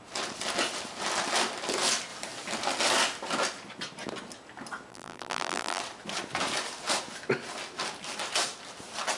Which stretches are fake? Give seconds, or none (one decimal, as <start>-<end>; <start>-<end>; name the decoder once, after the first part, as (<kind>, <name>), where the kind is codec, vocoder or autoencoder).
4.9-5.8 (vocoder, BigVGAN v2)